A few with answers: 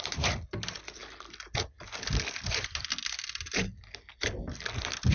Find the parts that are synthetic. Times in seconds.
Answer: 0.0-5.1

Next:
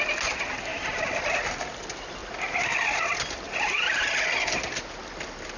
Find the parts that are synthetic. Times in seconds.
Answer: 0.7-1.2

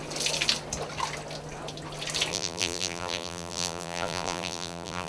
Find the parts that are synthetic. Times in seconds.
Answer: 2.3-5.1

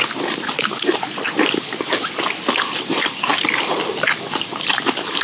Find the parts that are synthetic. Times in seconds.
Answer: none

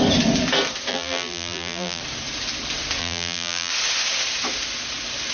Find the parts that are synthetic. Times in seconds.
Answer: 0.9-2.0; 3.0-3.7

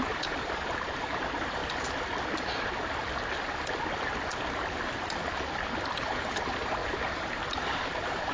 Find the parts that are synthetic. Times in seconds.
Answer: 0.0-1.6; 6.0-8.3

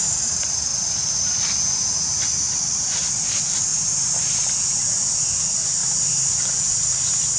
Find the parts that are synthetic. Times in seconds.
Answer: 0.0-0.7; 2.8-7.4